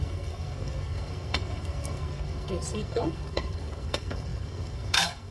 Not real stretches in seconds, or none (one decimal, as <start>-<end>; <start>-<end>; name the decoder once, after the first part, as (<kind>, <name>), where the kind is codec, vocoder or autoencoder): 0.0-5.3 (codec, SNAC)